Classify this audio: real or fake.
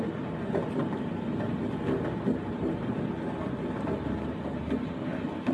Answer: real